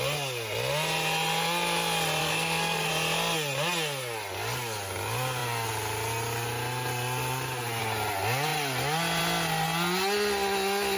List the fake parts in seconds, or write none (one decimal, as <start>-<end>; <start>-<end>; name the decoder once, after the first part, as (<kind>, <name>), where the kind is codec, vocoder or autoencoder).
2.2-2.9 (codec, SNAC)